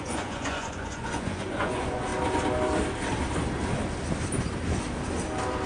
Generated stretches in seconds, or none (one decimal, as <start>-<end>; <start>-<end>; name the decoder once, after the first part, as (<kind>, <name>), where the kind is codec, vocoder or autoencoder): 0.0-2.1 (vocoder, Vocos)